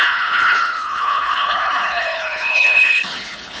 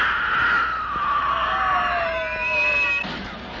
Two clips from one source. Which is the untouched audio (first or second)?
second